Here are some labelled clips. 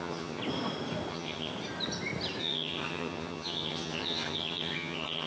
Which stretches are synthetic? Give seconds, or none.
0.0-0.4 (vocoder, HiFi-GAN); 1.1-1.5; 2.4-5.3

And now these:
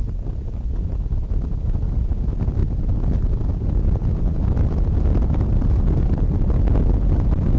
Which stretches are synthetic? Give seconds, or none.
none

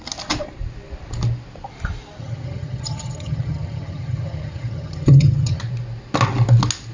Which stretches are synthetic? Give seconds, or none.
2.2-5.6 (vocoder, HiFi-GAN)

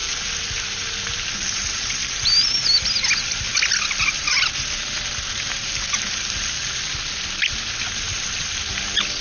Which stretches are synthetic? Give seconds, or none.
none

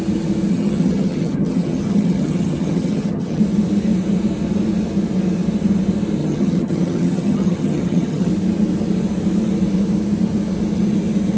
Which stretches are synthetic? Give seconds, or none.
0.5-3.4 (vocoder, HiFi-GAN); 6.2-8.3

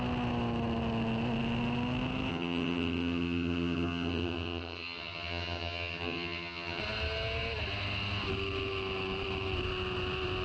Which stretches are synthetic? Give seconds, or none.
2.3-6.8 (vocoder, HiFi-GAN)